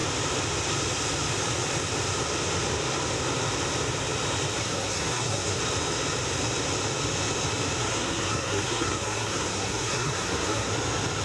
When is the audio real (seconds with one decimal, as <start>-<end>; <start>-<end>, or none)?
0.0-4.6; 5.6-7.8; 10.7-11.2